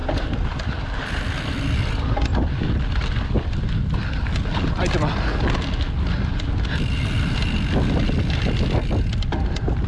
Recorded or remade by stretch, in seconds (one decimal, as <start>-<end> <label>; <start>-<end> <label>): 0.0-1.5 remade; 1.5-2.3 recorded; 2.3-3.6 remade; 3.6-9.9 recorded